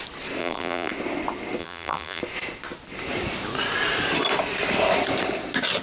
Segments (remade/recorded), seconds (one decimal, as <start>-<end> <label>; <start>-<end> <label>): 0.0-0.4 recorded; 0.4-0.9 remade; 0.9-1.6 recorded; 1.6-2.2 remade; 2.2-5.8 recorded